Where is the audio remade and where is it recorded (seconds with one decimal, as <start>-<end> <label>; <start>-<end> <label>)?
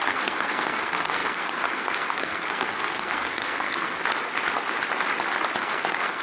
0.0-4.0 remade; 4.0-5.6 recorded; 5.6-6.2 remade